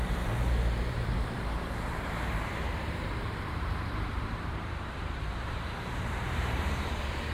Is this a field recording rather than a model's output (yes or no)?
no